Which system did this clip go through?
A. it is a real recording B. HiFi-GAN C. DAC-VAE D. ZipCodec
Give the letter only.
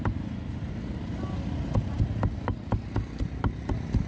A